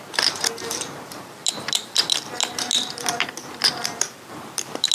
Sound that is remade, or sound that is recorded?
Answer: remade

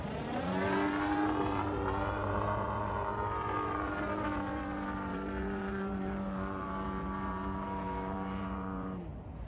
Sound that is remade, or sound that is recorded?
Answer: remade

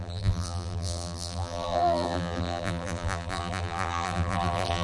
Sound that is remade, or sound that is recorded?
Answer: remade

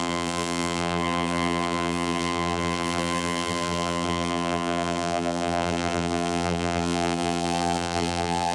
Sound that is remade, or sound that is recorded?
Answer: remade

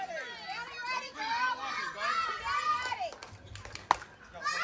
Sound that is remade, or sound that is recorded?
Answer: recorded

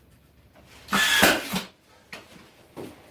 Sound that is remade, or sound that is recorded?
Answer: remade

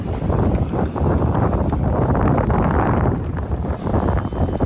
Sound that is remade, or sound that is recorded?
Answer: remade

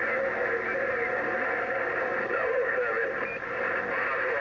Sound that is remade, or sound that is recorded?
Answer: recorded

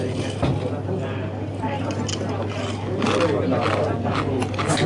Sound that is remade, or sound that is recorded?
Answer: recorded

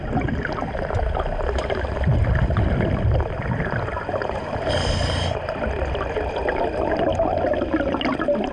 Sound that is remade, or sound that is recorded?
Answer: recorded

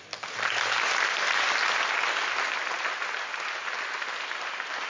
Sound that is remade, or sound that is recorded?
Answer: recorded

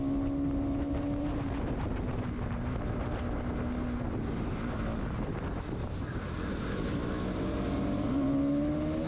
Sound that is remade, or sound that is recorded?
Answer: recorded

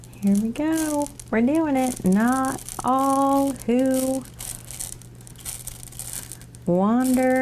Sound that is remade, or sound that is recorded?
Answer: recorded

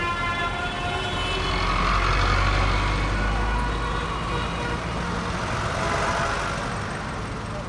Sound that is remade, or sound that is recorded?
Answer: recorded